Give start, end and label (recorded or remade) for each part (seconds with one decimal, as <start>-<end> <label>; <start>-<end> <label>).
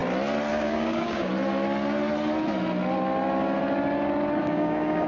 0.0-0.5 recorded; 0.5-1.3 remade; 1.3-4.4 recorded; 4.4-5.1 remade